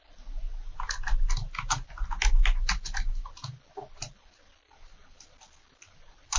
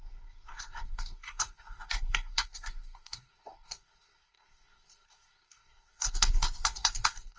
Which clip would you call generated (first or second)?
second